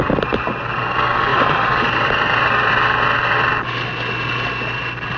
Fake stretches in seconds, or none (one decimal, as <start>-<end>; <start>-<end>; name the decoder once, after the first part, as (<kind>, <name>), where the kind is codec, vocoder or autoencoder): 1.3-2.7 (vocoder, BigVGAN v2)